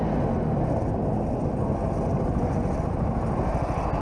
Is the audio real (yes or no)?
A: yes